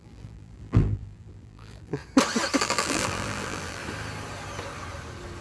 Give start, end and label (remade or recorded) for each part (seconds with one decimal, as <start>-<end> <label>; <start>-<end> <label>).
0.0-2.0 remade; 2.0-2.6 recorded; 2.6-3.8 remade; 3.8-5.4 recorded

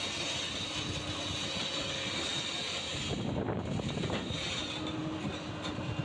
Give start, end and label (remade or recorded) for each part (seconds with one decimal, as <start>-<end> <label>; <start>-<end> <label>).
0.0-6.0 recorded

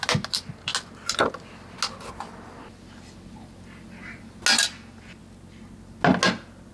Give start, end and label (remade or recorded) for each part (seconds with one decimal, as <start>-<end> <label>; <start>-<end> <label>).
0.0-6.7 recorded